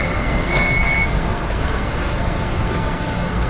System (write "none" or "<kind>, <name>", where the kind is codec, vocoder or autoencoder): codec, SNAC